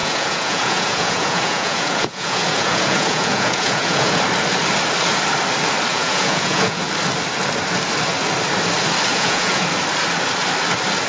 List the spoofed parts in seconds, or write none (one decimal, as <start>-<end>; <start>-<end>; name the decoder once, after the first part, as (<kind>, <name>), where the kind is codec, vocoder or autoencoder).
0.0-4.2 (vocoder, Vocos); 5.9-6.8; 9.1-9.6